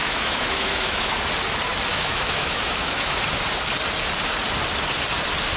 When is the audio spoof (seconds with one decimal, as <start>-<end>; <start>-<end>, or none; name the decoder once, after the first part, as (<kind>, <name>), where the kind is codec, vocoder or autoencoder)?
0.0-1.1 (autoencoder, DAC-VAE); 1.9-3.2